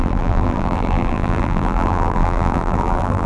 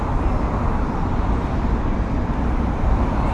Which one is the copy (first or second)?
first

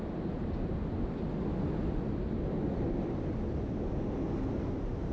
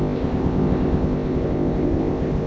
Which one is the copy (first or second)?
second